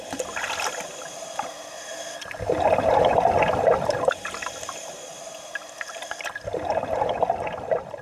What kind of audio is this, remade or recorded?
remade